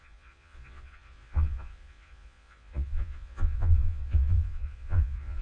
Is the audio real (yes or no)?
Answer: no